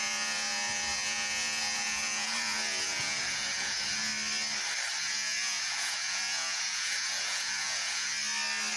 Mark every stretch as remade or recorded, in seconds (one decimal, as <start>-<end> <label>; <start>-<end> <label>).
0.0-4.1 remade; 4.1-5.0 recorded; 5.0-8.1 remade; 8.1-8.8 recorded